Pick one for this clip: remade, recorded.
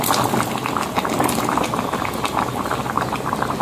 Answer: recorded